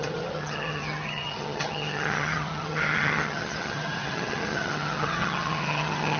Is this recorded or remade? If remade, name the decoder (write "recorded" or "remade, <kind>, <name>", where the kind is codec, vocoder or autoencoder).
remade, vocoder, HiFi-GAN